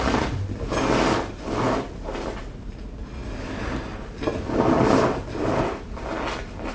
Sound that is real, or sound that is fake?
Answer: real